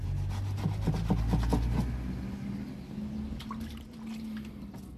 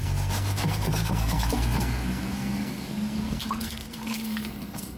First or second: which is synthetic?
second